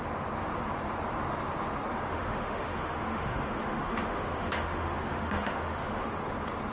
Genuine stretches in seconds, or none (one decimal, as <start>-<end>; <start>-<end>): 0.0-2.1; 6.1-6.7